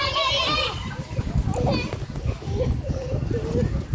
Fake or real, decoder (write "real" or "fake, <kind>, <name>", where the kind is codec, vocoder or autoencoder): real